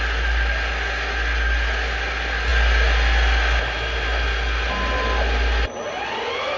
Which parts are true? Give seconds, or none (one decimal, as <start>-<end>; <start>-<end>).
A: 0.0-6.6